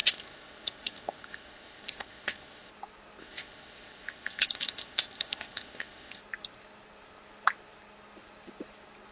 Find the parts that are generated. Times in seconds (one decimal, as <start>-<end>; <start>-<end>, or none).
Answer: 0.0-2.7; 3.2-6.2